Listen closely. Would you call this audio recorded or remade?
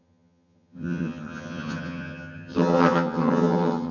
remade